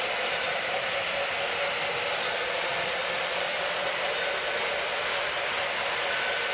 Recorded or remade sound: recorded